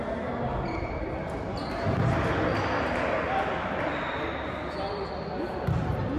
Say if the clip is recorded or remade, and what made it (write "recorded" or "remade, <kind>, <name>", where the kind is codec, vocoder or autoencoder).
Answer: recorded